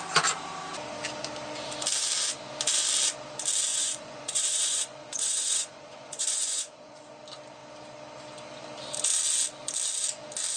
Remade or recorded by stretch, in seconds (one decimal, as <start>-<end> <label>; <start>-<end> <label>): 0.0-3.7 recorded; 3.7-7.0 remade; 7.0-10.6 recorded